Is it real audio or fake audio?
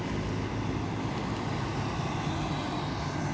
real